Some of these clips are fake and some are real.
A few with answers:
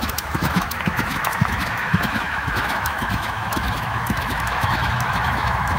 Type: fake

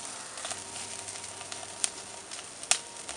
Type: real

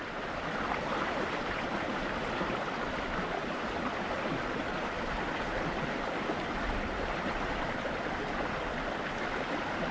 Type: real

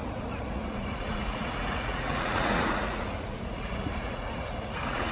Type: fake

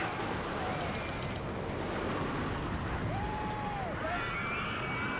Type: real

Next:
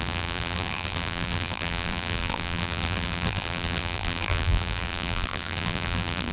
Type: fake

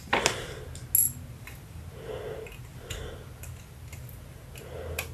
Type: real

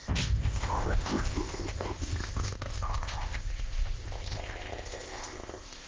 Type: fake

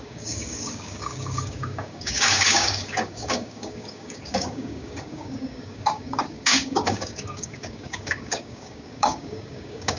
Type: fake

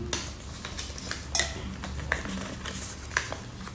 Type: real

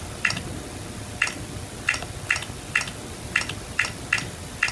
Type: real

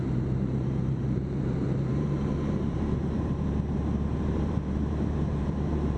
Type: fake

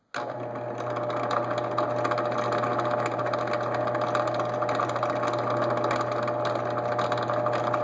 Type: real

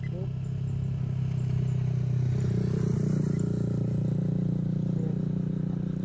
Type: real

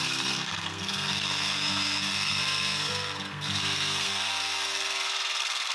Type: fake